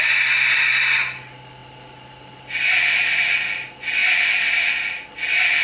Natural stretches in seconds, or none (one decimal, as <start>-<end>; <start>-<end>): 0.0-5.6